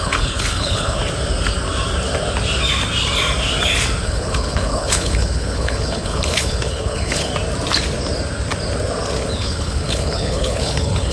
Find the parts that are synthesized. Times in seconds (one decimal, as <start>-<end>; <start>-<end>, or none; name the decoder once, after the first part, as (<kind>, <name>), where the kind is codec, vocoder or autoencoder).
0.0-1.0 (codec, HILCodec); 4.0-7.3; 9.3-11.1